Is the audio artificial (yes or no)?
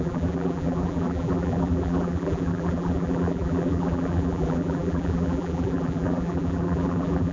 yes